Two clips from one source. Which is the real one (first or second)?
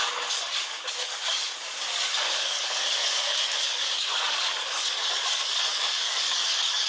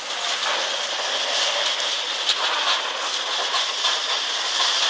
second